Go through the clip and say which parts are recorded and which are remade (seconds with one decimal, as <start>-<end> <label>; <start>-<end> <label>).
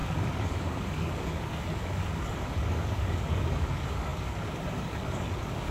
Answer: 0.0-5.7 remade